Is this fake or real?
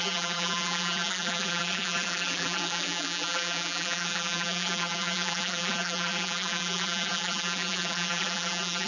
fake